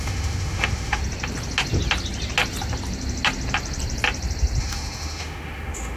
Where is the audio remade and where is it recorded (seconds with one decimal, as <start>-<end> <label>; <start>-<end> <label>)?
0.0-1.0 remade; 1.0-4.6 recorded; 4.6-6.0 remade